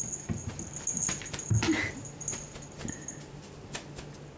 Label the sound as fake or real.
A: real